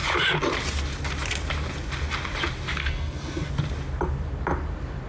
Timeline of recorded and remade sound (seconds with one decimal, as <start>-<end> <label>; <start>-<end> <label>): 0.0-2.8 recorded; 2.8-3.5 remade; 3.5-5.1 recorded